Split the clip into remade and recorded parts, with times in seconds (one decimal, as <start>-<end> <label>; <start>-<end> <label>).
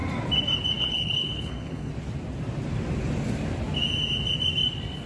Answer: 0.0-0.8 recorded; 0.8-1.9 remade; 1.9-5.1 recorded